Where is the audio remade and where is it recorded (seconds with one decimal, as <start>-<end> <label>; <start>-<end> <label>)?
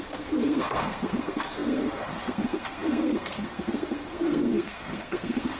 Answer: 0.0-5.6 remade